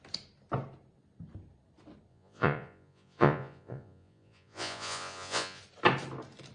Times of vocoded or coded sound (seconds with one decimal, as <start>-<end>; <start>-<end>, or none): 2.1-5.6

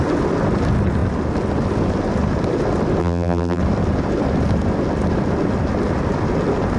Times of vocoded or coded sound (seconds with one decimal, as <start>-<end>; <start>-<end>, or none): 3.0-3.6

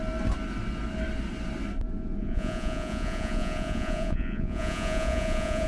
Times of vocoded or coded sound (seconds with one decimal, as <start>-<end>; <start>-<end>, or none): 2.2-5.7